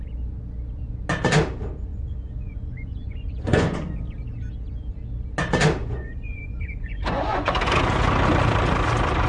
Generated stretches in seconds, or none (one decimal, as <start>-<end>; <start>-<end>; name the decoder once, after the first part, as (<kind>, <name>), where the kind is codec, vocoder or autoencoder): 1.9-3.9 (vocoder, Vocos); 5.8-7.8